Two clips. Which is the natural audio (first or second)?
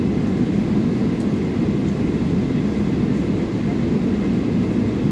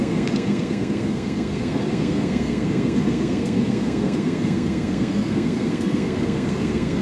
first